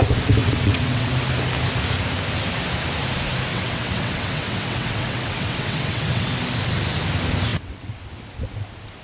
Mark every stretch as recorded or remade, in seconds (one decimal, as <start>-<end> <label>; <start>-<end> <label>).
0.0-0.4 recorded; 0.4-1.1 remade; 1.1-3.5 recorded; 3.5-6.3 remade; 6.3-7.5 recorded; 7.5-8.1 remade; 8.1-9.0 recorded